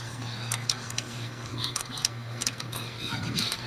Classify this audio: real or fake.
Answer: fake